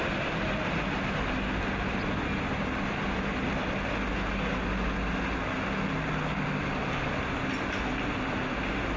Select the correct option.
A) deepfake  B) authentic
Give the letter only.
B